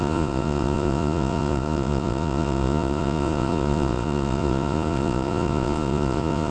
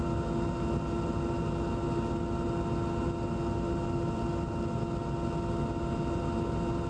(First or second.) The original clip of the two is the second